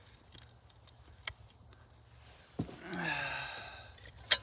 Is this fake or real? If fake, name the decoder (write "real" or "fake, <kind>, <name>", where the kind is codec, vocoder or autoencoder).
real